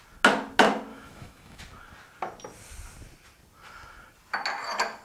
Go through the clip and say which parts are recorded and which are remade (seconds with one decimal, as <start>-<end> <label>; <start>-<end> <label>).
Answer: 0.0-0.9 recorded; 0.9-1.6 remade; 1.6-5.0 recorded